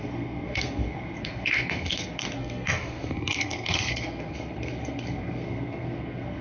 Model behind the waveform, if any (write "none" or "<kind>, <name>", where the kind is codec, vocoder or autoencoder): codec, SNAC